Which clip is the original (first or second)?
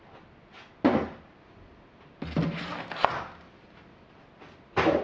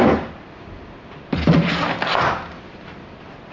first